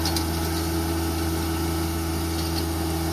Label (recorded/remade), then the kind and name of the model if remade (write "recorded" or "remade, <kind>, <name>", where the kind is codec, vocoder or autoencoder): recorded